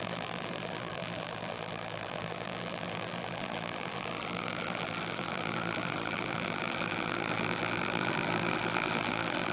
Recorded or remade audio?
remade